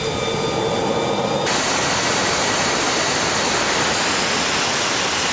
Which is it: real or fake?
real